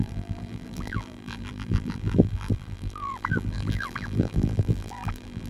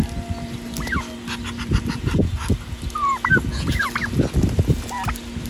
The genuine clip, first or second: second